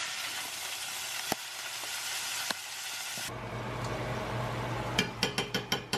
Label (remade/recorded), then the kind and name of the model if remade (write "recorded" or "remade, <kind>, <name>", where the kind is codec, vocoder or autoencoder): recorded